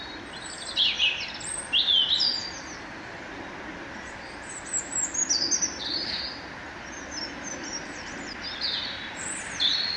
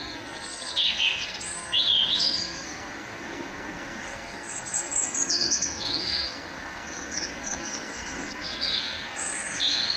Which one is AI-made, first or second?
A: second